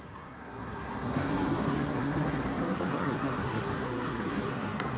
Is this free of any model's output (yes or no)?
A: no